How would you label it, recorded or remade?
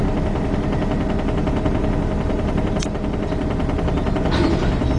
recorded